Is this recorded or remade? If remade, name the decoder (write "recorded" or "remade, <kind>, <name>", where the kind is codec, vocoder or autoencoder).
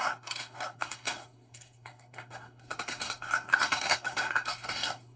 remade, codec, SNAC